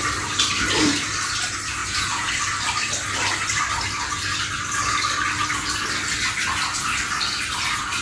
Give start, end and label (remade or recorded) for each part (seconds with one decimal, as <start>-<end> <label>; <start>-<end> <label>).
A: 0.0-1.8 recorded; 1.8-2.3 remade; 2.3-8.0 recorded